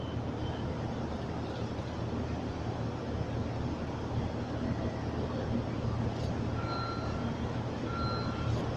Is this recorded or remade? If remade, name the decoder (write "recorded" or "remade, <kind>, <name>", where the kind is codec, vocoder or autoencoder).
recorded